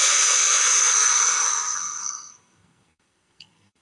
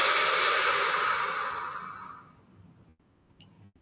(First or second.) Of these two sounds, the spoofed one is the first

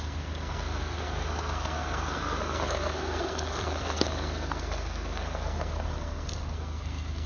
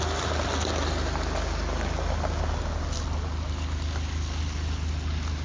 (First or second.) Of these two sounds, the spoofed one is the first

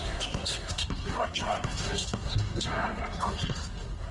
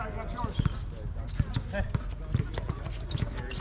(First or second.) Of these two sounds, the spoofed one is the first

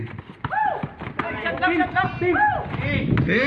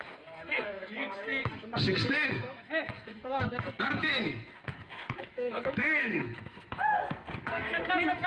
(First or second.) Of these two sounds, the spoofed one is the second